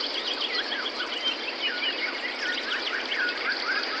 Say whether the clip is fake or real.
real